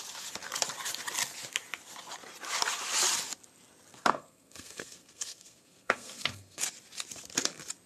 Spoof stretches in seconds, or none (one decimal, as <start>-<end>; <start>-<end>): 3.9-6.6